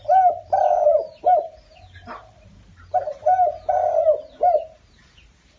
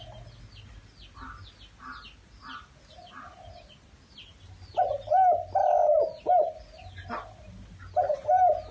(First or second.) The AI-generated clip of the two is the first